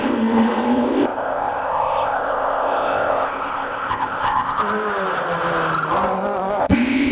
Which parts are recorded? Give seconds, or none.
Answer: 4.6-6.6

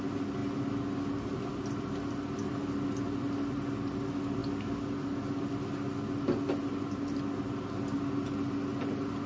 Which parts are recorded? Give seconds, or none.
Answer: 0.0-9.3